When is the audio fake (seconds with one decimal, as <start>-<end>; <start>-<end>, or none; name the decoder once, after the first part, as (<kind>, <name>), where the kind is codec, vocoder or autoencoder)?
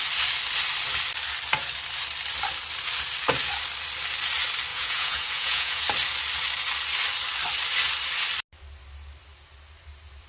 4.7-5.8 (vocoder, Vocos)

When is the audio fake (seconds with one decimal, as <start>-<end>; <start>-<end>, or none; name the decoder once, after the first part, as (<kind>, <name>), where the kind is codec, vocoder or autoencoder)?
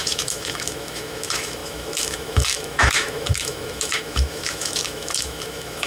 0.0-5.9 (autoencoder, DAC-VAE)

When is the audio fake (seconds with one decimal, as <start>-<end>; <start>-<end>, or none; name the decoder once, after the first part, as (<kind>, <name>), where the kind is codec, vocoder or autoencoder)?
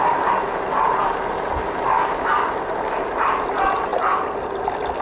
none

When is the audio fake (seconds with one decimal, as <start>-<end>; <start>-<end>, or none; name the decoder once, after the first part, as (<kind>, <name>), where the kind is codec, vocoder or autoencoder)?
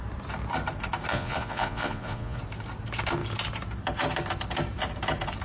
1.1-2.4 (vocoder, Vocos)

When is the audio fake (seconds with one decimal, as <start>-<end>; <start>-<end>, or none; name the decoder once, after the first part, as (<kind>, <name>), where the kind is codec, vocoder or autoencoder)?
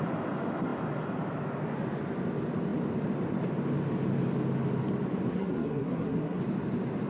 5.3-6.4 (codec, SNAC)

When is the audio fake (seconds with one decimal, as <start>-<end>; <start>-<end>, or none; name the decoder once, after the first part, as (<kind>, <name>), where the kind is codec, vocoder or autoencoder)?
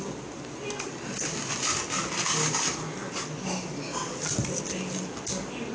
none